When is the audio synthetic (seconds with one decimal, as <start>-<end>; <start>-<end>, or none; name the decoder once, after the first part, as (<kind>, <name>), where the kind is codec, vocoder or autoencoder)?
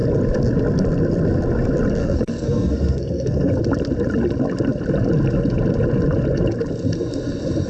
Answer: 2.0-3.5 (codec, SNAC)